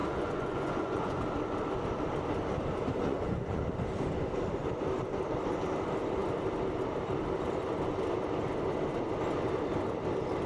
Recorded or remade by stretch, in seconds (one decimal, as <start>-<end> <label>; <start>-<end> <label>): 0.0-1.2 remade; 1.2-3.0 recorded; 3.0-3.6 remade; 3.6-10.5 recorded